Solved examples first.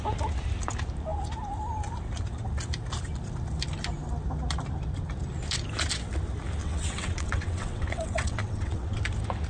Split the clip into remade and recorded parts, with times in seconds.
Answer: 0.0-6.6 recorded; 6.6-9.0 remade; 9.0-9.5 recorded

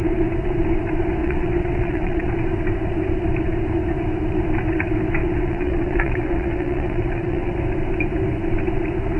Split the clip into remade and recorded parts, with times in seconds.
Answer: 0.0-1.2 recorded; 1.2-2.3 remade; 2.3-5.2 recorded; 5.2-7.5 remade; 7.5-9.2 recorded

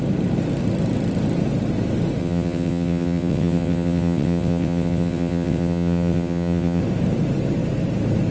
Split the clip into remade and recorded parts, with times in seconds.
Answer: 0.0-2.2 recorded; 2.2-6.8 remade; 6.8-8.3 recorded

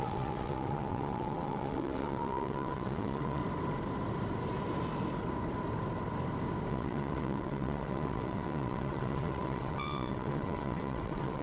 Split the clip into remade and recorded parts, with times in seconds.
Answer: 0.0-3.4 remade; 3.4-6.7 recorded; 6.7-11.4 remade

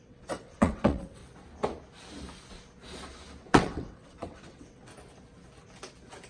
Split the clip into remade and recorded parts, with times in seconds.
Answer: 0.0-1.2 remade; 1.2-3.4 recorded; 3.4-4.9 remade; 4.9-6.3 recorded

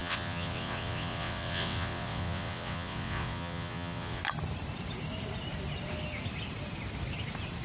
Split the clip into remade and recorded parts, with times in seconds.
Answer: 0.0-4.2 remade; 4.2-7.6 recorded

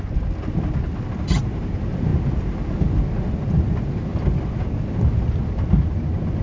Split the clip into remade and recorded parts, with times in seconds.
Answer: 0.0-6.4 recorded